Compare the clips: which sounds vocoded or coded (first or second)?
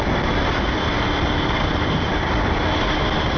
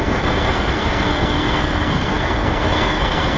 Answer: second